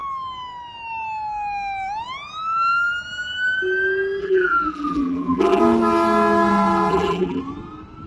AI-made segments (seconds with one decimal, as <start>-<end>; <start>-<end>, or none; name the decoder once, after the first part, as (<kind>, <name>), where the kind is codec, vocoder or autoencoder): 4.2-5.6 (vocoder, BigVGAN v2); 6.9-7.4